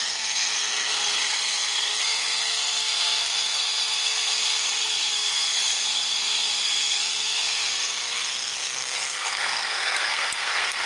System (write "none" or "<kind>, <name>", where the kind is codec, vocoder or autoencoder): codec, SNAC